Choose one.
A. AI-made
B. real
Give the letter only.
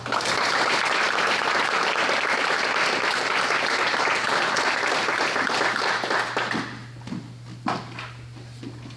B